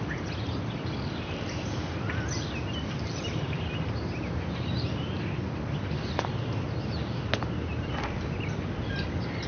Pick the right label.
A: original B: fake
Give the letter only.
A